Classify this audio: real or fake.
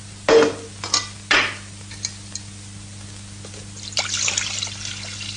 real